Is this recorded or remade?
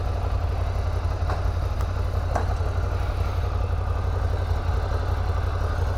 recorded